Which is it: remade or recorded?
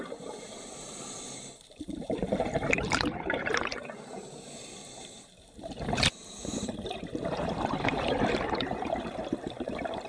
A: remade